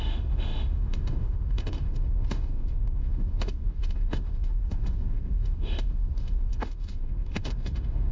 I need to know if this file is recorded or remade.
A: remade